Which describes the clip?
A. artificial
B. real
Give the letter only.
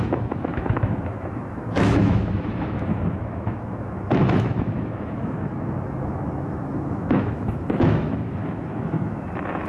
A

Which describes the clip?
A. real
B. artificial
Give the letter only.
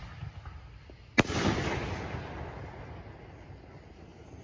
A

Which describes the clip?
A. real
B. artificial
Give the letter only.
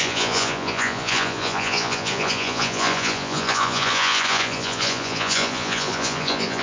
B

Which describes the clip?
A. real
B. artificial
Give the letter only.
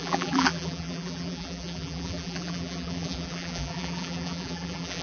B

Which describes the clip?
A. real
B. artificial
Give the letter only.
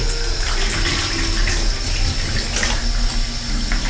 A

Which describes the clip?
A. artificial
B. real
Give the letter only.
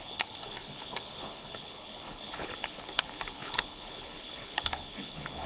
A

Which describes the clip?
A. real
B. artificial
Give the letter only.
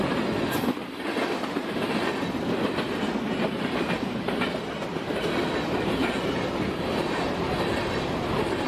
A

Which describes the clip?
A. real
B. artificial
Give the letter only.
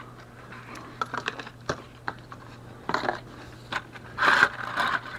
A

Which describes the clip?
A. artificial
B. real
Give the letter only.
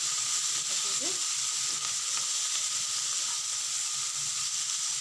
B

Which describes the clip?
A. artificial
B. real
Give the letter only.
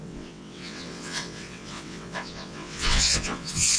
A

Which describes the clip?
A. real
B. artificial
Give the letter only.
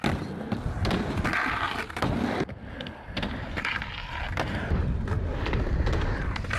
A